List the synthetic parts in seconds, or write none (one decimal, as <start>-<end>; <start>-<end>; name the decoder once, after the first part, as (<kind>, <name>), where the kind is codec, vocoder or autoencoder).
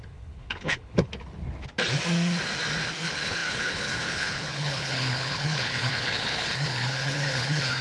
0.0-1.1 (codec, HILCodec); 3.0-7.8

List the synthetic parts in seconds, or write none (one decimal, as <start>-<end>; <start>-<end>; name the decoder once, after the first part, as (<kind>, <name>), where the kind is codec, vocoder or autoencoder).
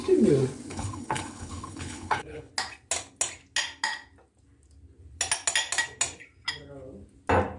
0.7-2.5 (codec, HILCodec)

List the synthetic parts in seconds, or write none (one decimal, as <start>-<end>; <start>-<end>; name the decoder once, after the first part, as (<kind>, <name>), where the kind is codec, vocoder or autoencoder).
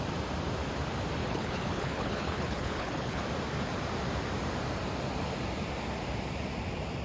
1.2-3.2 (codec, HILCodec)